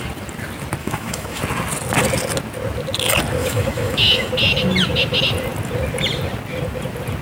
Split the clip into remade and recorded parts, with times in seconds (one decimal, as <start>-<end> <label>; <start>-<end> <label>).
0.0-0.8 recorded; 0.8-1.4 remade; 1.4-3.4 recorded; 3.4-4.3 remade; 4.3-7.2 recorded